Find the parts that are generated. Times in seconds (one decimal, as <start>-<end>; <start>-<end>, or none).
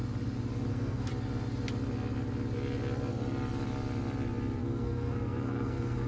0.7-1.1; 4.6-6.1